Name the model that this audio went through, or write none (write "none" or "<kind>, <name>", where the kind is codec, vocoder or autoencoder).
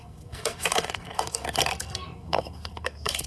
codec, SNAC